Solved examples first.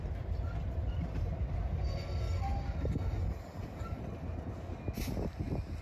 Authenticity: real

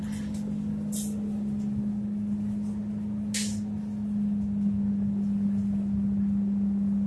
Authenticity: real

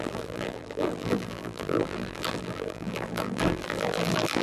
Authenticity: fake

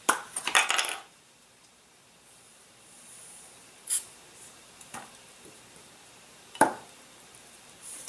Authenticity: fake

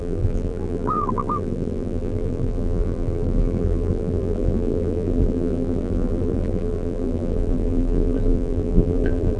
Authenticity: fake